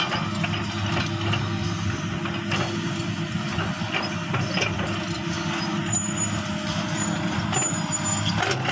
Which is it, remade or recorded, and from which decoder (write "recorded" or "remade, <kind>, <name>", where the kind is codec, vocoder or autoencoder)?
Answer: recorded